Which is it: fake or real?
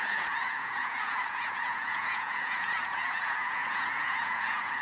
fake